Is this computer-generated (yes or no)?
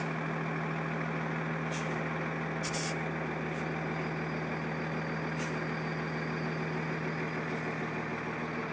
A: no